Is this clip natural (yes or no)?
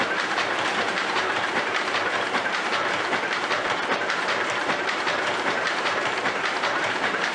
no